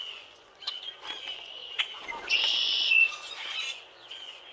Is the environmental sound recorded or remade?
remade